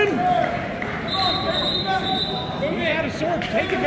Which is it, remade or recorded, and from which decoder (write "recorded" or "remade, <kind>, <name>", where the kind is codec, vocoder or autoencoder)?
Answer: recorded